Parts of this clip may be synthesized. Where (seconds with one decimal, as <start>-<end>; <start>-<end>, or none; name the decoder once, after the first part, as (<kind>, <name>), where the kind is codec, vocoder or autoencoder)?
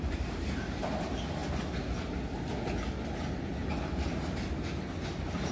0.0-1.4 (vocoder, BigVGAN v2); 4.6-5.5